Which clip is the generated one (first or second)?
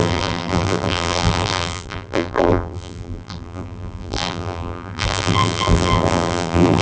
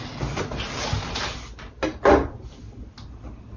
first